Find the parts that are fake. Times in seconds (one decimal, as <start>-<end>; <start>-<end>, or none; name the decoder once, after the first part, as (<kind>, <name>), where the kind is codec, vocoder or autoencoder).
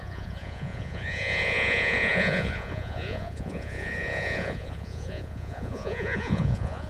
0.0-6.9 (vocoder, Vocos)